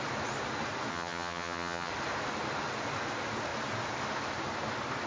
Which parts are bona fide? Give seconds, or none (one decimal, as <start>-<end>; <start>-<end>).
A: 0.0-0.9; 1.9-5.1